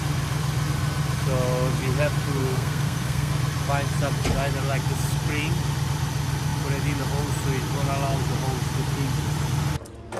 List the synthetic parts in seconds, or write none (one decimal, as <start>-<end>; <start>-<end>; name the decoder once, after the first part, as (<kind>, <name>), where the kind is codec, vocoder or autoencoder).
2.4-3.3 (codec, SNAC)